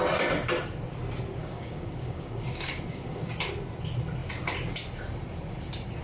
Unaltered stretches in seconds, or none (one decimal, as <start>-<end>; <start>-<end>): 0.0-1.4; 3.3-6.0